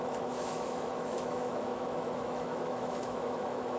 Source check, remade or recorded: remade